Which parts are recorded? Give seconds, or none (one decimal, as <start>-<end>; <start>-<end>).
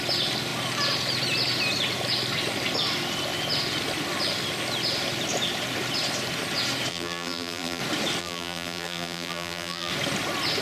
0.0-6.9; 7.8-8.2; 9.9-10.6